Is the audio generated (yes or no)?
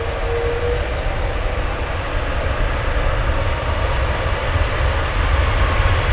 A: no